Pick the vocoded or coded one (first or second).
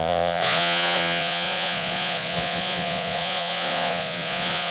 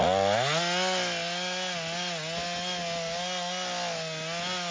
first